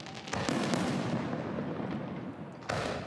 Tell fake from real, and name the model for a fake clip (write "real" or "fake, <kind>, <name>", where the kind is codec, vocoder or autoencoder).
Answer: real